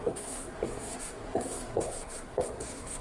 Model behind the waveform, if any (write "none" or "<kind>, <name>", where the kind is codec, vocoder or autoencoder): codec, SNAC